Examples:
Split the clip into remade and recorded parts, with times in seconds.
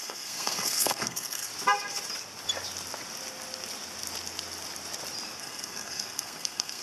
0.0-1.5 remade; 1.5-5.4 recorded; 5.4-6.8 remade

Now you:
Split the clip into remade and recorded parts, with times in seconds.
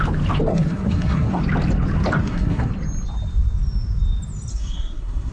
0.0-0.5 recorded; 0.5-1.4 remade; 1.4-2.2 recorded; 2.2-2.7 remade; 2.7-4.5 recorded; 4.5-5.3 remade